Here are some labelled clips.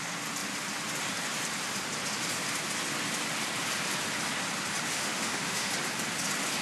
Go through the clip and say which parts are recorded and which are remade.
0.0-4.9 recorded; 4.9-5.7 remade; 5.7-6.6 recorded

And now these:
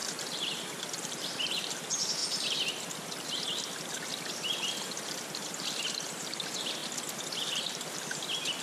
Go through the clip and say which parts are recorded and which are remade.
0.0-2.2 remade; 2.2-4.7 recorded; 4.7-6.8 remade; 6.8-7.6 recorded; 7.6-8.6 remade

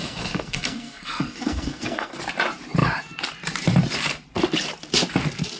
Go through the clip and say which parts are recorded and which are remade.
0.0-2.2 remade; 2.2-5.6 recorded

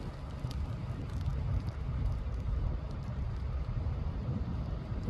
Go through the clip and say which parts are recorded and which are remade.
0.0-1.3 recorded; 1.3-4.4 remade; 4.4-5.1 recorded

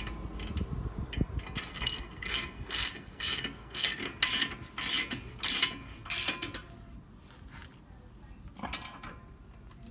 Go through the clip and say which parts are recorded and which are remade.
0.0-1.7 recorded; 1.7-4.0 remade; 4.0-9.9 recorded

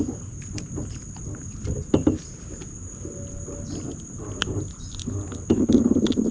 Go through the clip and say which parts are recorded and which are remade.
0.0-6.3 recorded

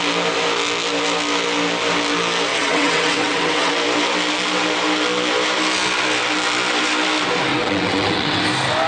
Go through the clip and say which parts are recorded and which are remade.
0.0-2.5 recorded; 2.5-3.7 remade; 3.7-7.5 recorded; 7.5-8.4 remade; 8.4-8.9 recorded